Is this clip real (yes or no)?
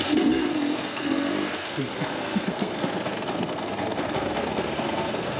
no